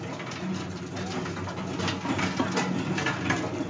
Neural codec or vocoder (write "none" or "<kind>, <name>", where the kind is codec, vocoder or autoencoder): none